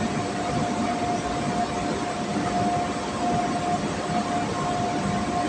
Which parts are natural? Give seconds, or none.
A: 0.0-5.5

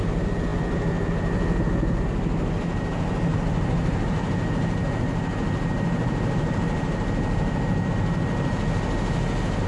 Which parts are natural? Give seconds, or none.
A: 0.0-3.3; 7.9-9.7

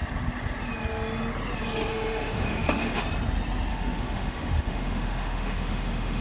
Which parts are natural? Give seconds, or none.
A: 0.0-1.9; 3.0-3.7

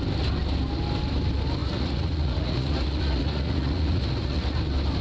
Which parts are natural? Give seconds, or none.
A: 0.0-1.6; 4.6-5.0

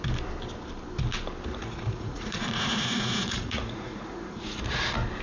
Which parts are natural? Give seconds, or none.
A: 0.0-1.5; 4.6-5.2